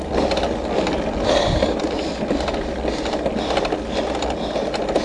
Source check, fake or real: real